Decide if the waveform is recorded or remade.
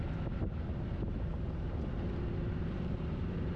remade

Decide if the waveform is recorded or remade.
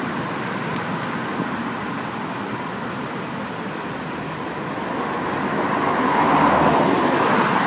recorded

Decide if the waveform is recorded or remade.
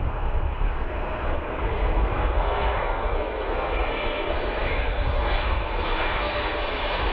remade